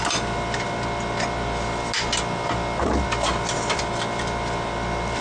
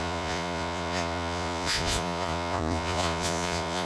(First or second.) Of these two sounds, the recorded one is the first